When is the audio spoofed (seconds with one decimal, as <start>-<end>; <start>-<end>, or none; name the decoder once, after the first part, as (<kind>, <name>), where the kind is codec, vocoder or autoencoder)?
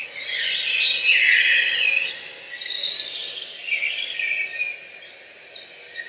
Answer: none